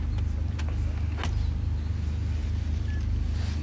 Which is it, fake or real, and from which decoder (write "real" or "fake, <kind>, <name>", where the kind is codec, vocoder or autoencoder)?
real